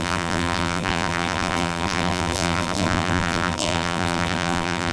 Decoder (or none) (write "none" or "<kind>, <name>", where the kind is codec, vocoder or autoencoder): vocoder, BigVGAN v2